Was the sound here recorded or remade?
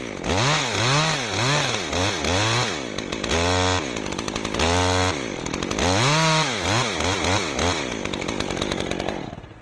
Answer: recorded